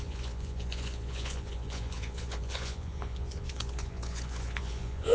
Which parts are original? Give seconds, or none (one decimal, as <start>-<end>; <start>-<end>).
none